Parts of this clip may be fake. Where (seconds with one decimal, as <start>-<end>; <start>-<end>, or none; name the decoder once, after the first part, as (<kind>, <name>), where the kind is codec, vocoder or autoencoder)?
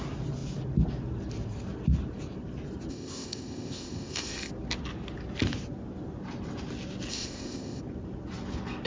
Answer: 2.9-4.5 (codec, ZipCodec); 7.1-7.8